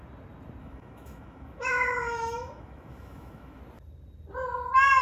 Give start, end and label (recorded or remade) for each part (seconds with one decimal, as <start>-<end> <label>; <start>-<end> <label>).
0.0-0.6 recorded; 0.6-3.6 remade; 3.6-5.0 recorded